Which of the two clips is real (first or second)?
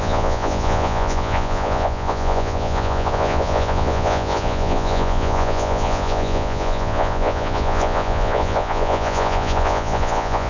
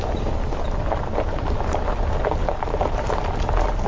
second